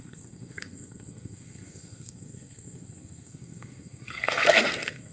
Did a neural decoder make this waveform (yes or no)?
yes